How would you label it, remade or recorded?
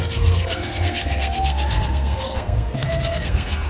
remade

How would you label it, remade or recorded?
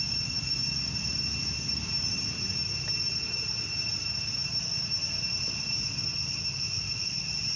recorded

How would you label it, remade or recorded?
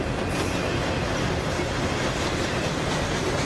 recorded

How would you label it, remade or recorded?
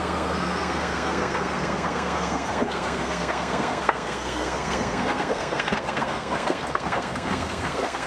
remade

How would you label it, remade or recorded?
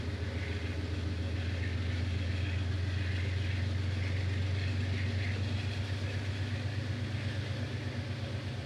recorded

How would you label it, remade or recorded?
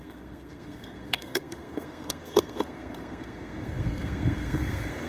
remade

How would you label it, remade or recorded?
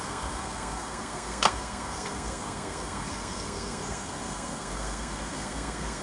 remade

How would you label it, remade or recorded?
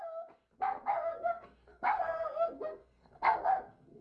remade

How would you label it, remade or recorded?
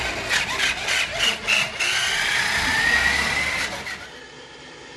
recorded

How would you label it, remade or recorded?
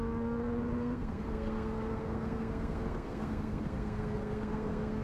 remade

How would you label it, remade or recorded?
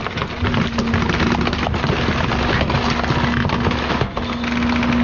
recorded